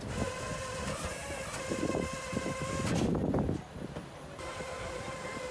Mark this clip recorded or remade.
recorded